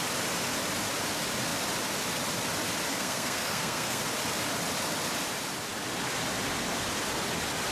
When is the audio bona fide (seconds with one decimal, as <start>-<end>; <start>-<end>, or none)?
0.0-2.9; 4.0-7.7